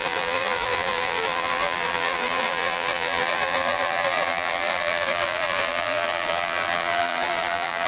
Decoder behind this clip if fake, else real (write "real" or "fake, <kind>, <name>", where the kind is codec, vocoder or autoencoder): fake, vocoder, BigVGAN v2